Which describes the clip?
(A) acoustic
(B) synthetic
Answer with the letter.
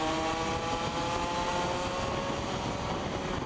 A